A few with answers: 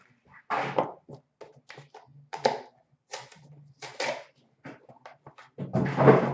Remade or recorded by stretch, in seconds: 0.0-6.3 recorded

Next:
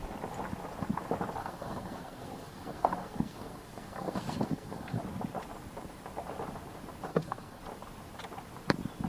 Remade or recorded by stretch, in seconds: 0.0-1.4 recorded; 1.4-5.0 remade; 5.0-7.1 recorded; 7.1-7.6 remade; 7.6-9.1 recorded

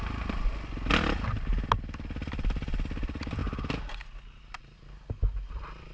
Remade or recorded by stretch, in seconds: 0.0-5.9 recorded